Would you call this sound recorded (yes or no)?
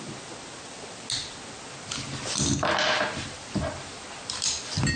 yes